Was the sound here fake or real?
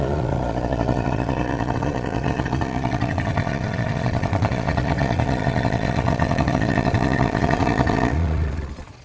fake